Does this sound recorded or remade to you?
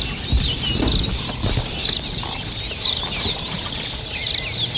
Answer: recorded